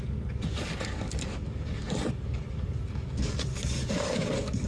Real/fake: fake